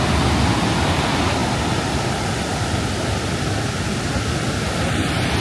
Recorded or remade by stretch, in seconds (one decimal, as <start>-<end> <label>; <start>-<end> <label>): 0.0-5.4 recorded